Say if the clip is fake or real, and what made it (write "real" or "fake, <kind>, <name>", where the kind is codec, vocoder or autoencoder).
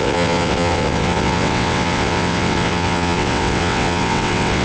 fake, vocoder, WaveNeXt